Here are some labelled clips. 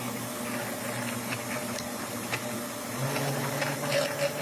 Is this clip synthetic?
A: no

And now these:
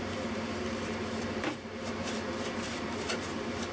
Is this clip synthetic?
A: yes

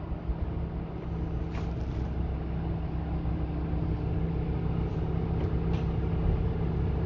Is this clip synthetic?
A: no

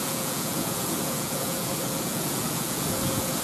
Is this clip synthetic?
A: yes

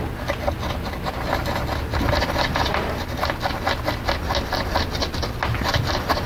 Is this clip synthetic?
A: no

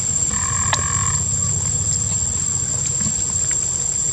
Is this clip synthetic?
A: no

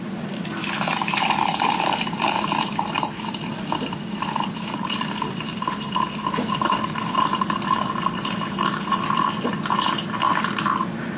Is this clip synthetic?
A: yes